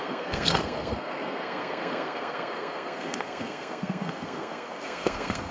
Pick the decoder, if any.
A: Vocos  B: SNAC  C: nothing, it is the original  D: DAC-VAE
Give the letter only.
B